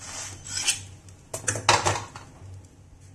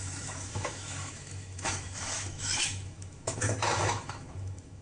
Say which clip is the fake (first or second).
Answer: second